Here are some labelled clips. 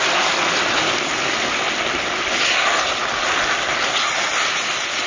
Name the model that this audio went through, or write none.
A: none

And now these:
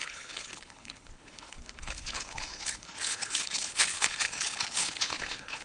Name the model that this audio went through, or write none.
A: codec, HILCodec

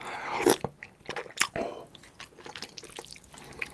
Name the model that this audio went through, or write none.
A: none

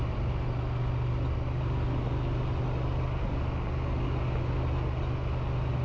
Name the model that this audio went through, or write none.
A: none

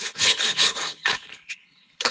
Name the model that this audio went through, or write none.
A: codec, HILCodec